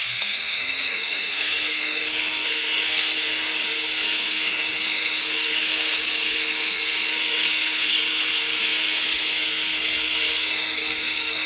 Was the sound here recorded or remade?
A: remade